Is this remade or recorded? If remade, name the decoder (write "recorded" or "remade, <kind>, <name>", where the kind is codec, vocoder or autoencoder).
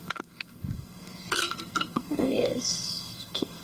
remade, codec, SNAC